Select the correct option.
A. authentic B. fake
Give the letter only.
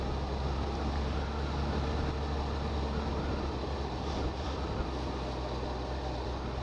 A